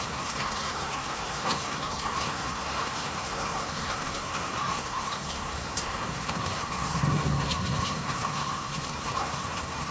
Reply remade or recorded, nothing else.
remade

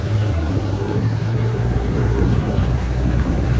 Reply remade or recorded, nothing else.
remade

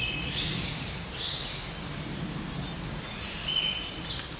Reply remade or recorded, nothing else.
recorded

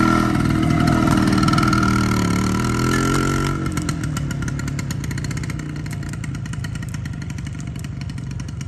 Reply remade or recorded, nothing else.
recorded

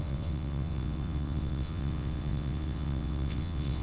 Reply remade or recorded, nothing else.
remade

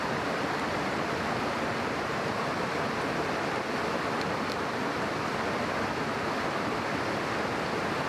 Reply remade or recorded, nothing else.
recorded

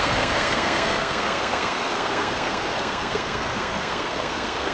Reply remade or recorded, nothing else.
remade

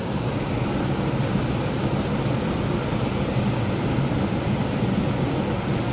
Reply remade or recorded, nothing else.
recorded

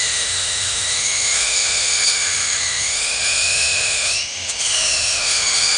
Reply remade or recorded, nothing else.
remade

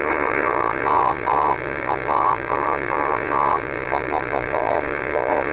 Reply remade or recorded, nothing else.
remade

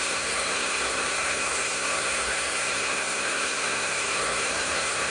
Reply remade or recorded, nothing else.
remade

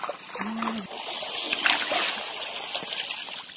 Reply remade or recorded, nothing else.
recorded